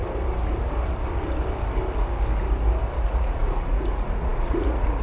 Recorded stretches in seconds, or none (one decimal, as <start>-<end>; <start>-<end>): 0.0-3.0